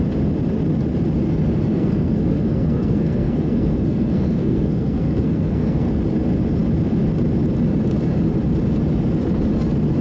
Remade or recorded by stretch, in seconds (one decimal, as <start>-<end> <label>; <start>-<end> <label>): 0.0-1.7 recorded; 1.7-5.9 remade; 5.9-10.0 recorded